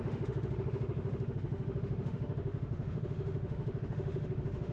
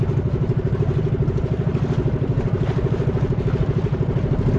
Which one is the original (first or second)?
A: second